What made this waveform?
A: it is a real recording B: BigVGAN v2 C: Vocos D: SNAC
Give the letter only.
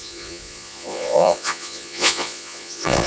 C